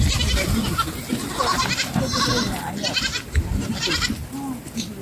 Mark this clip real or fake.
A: real